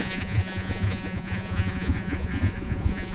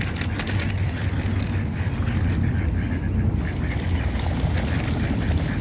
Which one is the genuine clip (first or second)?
second